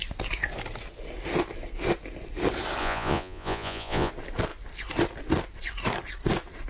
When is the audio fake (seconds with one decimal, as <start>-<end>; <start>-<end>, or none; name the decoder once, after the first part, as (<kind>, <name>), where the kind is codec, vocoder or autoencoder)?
2.8-4.1 (vocoder, Vocos)